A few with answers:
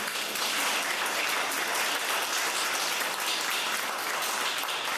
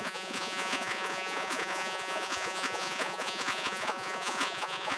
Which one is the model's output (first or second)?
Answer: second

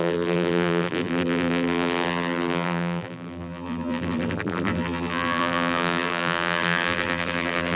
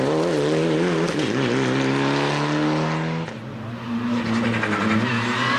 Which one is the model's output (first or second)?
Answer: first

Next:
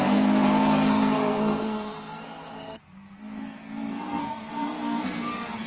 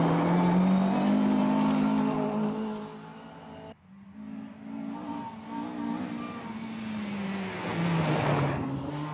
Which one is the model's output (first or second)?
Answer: first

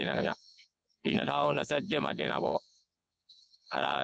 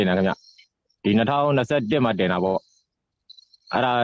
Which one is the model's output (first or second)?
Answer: first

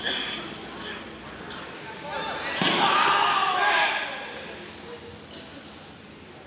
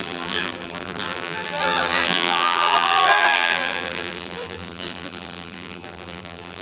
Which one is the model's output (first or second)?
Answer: second